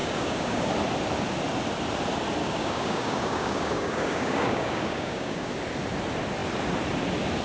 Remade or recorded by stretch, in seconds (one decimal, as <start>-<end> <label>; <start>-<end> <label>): 0.0-0.7 remade; 0.7-2.4 recorded; 2.4-5.5 remade; 5.5-7.4 recorded